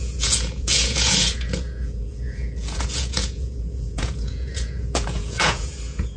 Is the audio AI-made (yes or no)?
yes